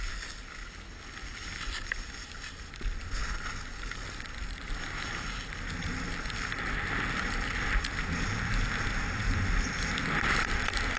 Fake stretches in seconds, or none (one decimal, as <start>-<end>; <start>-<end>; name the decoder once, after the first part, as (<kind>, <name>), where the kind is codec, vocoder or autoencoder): none